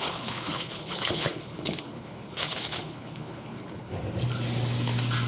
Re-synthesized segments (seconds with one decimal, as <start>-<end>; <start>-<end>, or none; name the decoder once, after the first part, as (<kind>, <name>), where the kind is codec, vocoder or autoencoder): 0.0-3.9 (codec, HILCodec)